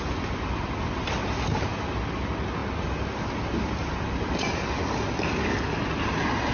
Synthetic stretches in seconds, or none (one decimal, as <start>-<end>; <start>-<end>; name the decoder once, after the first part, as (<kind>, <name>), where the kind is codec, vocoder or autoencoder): none